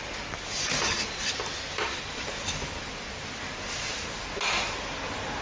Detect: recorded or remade recorded